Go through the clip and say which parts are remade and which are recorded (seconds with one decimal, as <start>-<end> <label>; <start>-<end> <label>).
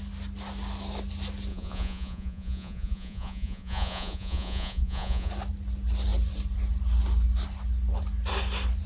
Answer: 0.0-1.5 recorded; 1.5-5.3 remade; 5.3-8.9 recorded